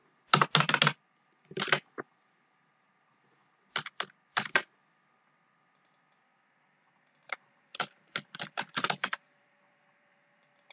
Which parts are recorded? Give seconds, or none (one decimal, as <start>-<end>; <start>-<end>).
0.0-1.0; 3.6-7.2